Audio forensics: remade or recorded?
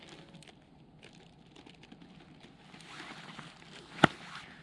recorded